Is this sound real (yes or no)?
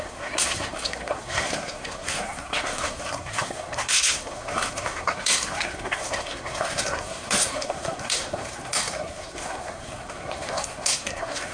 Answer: no